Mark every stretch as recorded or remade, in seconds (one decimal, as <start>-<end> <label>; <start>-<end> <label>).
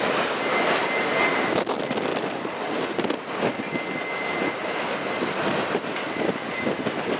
0.0-2.1 recorded; 2.1-2.7 remade; 2.7-4.6 recorded; 4.6-5.8 remade; 5.8-7.2 recorded